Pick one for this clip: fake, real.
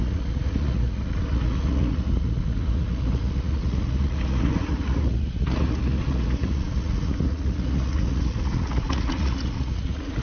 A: fake